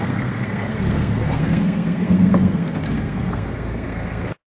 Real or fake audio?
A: fake